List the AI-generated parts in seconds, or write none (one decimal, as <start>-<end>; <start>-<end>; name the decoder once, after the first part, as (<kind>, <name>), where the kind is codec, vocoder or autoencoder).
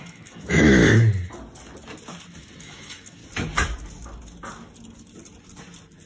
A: 0.0-0.8 (autoencoder, DAC-VAE); 2.6-3.2